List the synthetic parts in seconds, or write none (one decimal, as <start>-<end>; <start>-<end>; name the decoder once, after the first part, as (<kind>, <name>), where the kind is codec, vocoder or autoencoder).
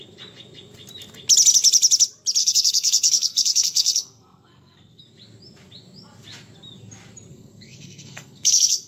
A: 2.4-5.0 (codec, SNAC); 7.3-8.9